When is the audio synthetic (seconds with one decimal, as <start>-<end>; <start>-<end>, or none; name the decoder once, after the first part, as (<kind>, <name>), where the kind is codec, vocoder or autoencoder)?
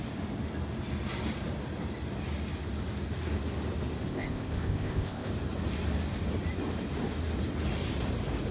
4.1-5.3 (codec, ZipCodec)